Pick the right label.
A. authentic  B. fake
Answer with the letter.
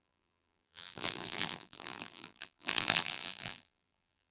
B